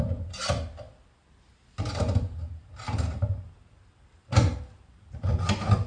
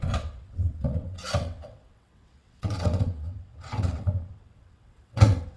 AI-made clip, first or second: second